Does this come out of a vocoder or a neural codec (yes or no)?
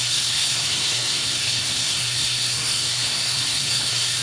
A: yes